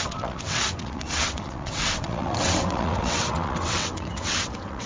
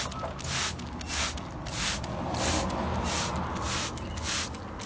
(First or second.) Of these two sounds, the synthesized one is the first